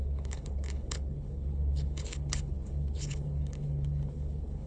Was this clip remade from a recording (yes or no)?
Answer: yes